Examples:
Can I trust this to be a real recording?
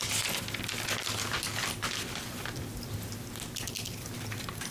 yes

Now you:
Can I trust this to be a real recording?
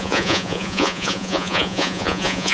no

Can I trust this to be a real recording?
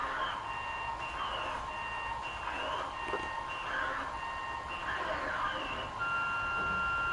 yes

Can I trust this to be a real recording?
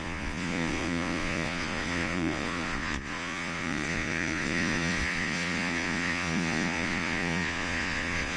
no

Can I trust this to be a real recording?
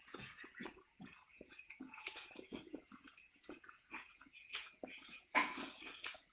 no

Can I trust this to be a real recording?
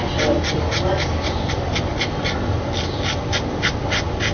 yes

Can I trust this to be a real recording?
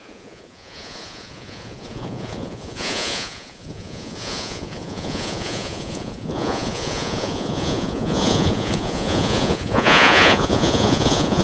no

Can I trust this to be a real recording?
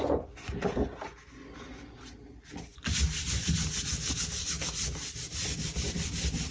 yes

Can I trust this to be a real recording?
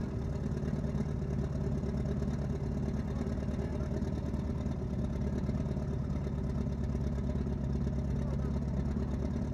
yes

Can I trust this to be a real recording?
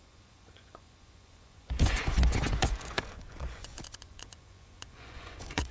no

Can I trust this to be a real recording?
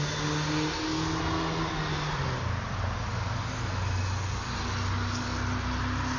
yes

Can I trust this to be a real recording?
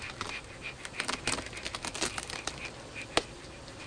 yes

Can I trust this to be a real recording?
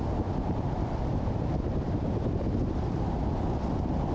yes